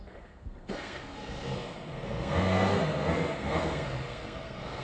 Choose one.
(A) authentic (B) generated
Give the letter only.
B